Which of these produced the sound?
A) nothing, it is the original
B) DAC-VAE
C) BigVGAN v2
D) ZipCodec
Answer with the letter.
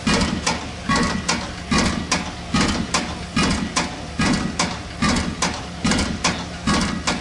A